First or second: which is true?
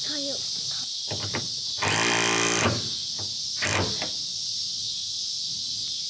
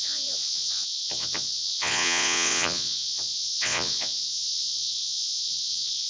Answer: first